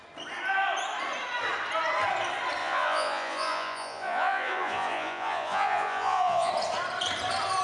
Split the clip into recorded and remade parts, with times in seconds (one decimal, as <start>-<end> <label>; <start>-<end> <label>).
0.0-2.6 recorded; 2.6-6.5 remade; 6.5-7.6 recorded

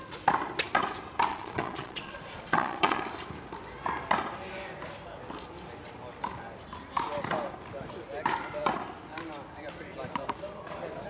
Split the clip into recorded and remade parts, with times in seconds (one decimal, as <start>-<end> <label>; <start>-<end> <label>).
0.0-1.3 recorded; 1.3-3.0 remade; 3.0-11.1 recorded

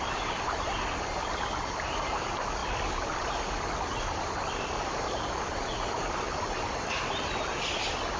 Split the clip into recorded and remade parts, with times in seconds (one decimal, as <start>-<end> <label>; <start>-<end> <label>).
0.0-8.2 recorded